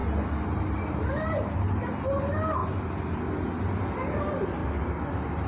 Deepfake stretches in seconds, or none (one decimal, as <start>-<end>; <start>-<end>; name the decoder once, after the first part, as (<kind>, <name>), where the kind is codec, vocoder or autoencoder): 2.6-3.2 (vocoder, BigVGAN v2); 4.6-5.1